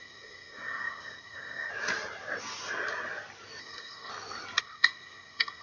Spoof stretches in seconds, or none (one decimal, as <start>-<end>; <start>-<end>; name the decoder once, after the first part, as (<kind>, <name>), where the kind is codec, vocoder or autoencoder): 0.0-1.7 (codec, SNAC); 3.6-4.1; 4.6-5.6